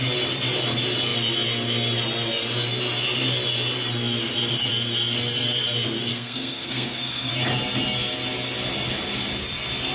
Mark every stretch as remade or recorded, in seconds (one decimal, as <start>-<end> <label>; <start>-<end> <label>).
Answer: 0.0-6.1 recorded; 6.1-7.3 remade; 7.3-9.9 recorded